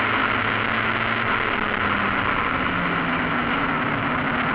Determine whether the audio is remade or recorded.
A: recorded